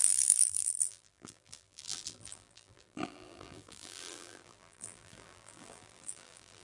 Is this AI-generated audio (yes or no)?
yes